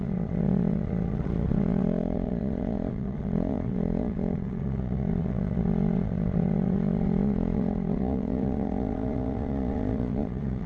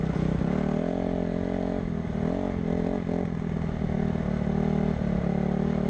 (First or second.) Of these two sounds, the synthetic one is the first